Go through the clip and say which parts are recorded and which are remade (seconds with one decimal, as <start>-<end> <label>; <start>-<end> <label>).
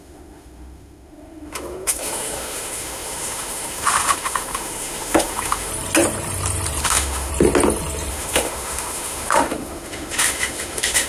0.0-5.7 remade; 5.7-6.8 recorded; 6.8-7.3 remade; 7.3-8.1 recorded; 8.1-11.1 remade